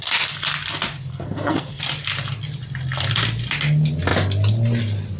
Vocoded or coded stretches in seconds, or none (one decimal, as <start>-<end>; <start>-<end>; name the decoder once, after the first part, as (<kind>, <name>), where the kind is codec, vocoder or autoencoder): 1.1-1.8 (codec, SNAC)